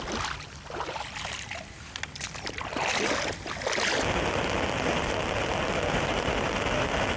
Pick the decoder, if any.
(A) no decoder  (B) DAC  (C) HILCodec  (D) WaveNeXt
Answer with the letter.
A